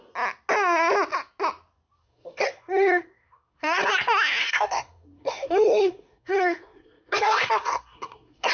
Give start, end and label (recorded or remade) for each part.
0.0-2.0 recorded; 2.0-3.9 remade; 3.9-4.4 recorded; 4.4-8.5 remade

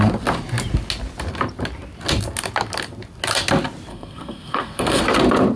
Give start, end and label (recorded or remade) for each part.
0.0-3.9 recorded; 3.9-5.0 remade; 5.0-5.6 recorded

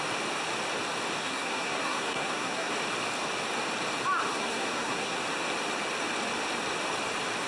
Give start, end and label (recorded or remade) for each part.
0.0-1.2 recorded; 1.2-2.7 remade; 2.7-4.3 recorded; 4.3-5.2 remade; 5.2-7.5 recorded

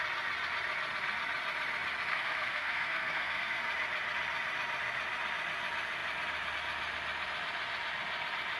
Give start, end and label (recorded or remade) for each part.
0.0-2.1 recorded; 2.1-3.6 remade; 3.6-8.6 recorded

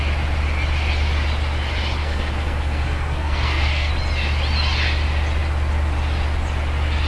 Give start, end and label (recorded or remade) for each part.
0.0-2.0 recorded; 2.0-3.9 remade; 3.9-7.1 recorded

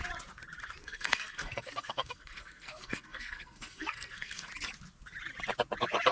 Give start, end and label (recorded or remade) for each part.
0.0-0.8 recorded; 0.8-4.5 remade; 4.5-6.1 recorded